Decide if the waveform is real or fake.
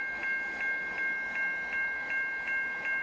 real